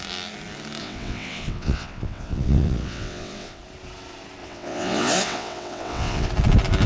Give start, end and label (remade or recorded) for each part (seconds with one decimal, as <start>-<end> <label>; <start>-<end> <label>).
0.0-0.8 recorded; 0.8-3.6 remade; 3.6-4.4 recorded; 4.4-6.3 remade; 6.3-6.9 recorded